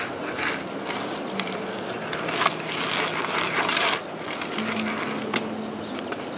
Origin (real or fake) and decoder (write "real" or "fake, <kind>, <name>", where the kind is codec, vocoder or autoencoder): real